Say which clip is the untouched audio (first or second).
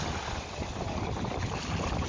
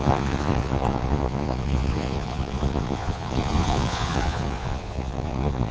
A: first